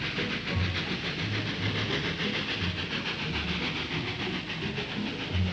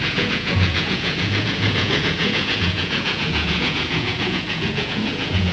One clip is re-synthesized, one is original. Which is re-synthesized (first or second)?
second